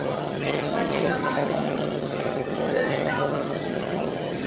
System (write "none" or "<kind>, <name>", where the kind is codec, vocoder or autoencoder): vocoder, HiFi-GAN